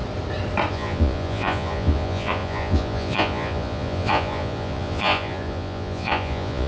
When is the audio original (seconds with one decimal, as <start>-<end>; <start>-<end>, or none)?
0.0-0.7